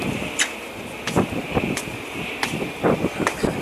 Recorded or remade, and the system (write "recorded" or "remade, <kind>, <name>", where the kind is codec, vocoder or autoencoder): remade, vocoder, BigVGAN v2